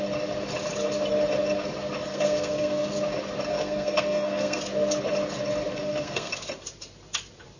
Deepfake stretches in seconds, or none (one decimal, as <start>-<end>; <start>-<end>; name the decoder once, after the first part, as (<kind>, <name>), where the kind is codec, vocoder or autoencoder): 2.1-2.9 (codec, SNAC); 3.5-4.6; 5.7-6.3